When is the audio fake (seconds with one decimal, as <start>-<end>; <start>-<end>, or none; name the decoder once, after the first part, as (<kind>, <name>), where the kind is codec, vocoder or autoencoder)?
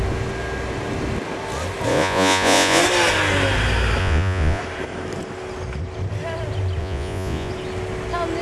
1.9-2.8 (vocoder, Vocos); 4.0-4.6; 6.8-7.5